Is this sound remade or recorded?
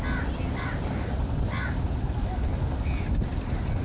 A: recorded